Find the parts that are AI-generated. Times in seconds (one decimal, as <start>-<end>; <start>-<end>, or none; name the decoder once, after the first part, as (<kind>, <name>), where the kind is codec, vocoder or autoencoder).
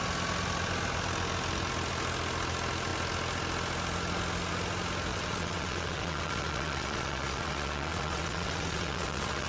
5.1-9.5 (vocoder, WaveNeXt)